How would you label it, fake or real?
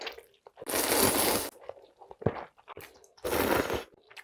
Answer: real